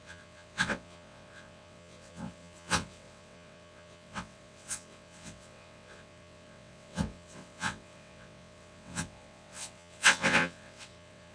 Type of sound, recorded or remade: remade